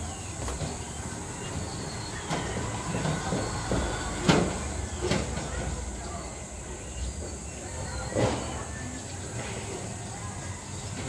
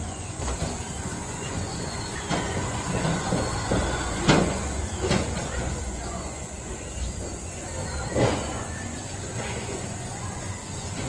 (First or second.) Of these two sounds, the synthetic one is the second